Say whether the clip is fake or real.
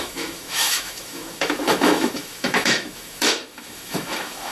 fake